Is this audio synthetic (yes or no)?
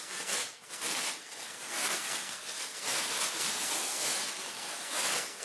yes